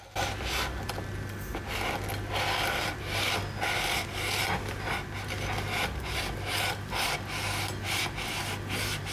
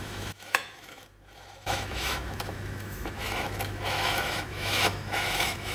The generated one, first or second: second